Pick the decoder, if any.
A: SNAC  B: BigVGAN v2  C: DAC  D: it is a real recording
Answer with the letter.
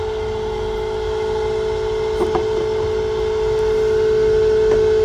D